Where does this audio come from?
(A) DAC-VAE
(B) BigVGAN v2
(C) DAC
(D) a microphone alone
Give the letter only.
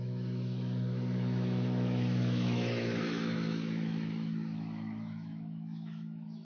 A